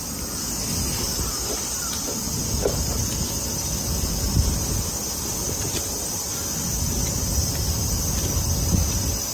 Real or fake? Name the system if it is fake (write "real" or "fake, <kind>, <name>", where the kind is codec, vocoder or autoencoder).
real